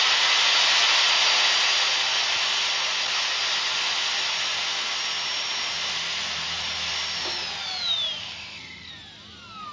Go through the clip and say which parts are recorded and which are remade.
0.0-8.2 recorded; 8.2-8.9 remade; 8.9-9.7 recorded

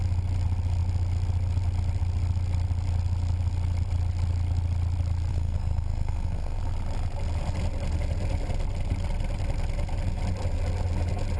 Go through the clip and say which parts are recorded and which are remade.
0.0-5.3 recorded; 5.3-6.6 remade; 6.6-11.4 recorded

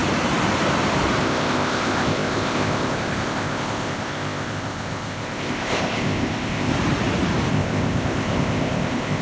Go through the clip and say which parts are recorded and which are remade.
0.0-1.2 recorded; 1.2-6.7 remade; 6.7-7.5 recorded; 7.5-9.2 remade

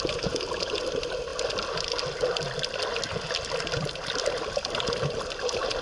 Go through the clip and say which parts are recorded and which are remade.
0.0-5.8 recorded

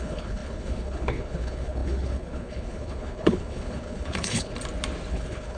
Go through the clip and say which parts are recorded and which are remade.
0.0-4.5 remade; 4.5-5.1 recorded; 5.1-5.6 remade

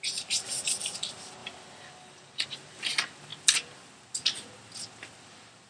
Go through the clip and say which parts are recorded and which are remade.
0.0-5.7 recorded

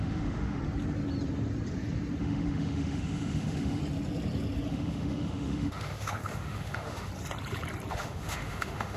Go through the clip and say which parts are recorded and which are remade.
0.0-0.6 remade; 0.6-2.2 recorded; 2.2-3.8 remade; 3.8-4.7 recorded; 4.7-7.1 remade; 7.1-7.9 recorded; 7.9-9.0 remade